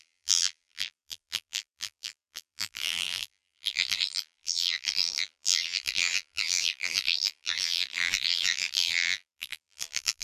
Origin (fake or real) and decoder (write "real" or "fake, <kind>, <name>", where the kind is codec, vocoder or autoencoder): fake, vocoder, BigVGAN v2